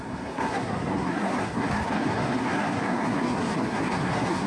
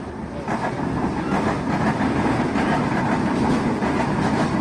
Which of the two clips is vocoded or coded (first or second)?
first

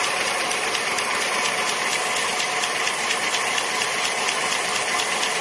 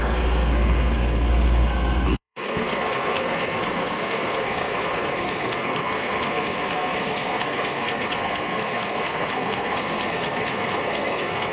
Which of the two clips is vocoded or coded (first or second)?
second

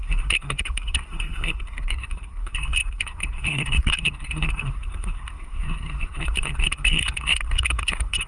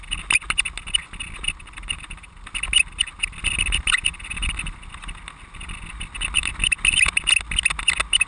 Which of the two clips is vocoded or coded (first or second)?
first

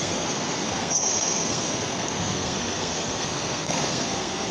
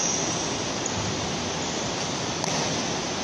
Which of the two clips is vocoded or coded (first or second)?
first